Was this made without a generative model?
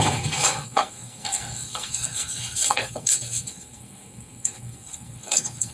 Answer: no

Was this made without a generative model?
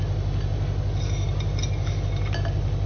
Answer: yes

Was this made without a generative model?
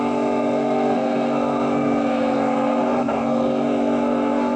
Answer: no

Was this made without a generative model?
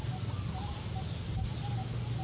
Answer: yes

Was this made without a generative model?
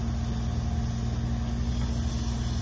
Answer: yes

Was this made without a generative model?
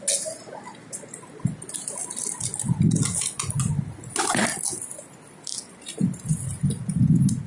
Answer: yes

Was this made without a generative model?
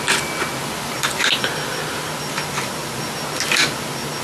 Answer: yes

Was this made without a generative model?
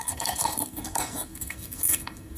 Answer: no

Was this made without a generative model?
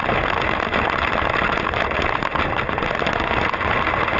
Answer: yes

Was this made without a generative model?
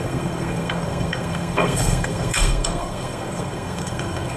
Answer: no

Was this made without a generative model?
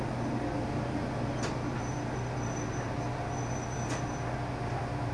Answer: yes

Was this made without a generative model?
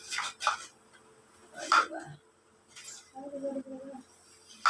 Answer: yes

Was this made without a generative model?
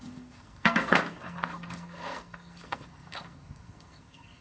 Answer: no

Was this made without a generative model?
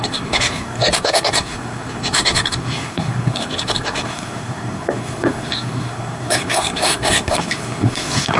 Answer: no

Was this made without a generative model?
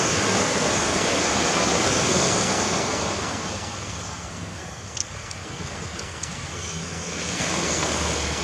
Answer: no